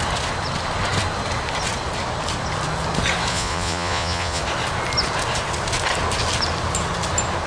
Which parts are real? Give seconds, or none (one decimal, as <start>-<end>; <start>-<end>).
0.0-3.3; 4.4-7.5